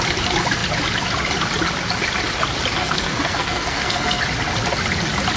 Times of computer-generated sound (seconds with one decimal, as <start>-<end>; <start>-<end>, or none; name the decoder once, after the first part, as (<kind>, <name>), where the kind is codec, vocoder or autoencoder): 2.8-4.2 (codec, SNAC)